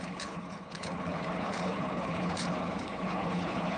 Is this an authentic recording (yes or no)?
no